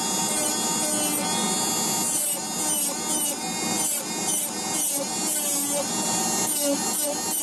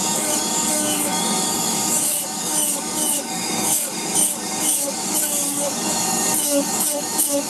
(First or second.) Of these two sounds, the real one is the first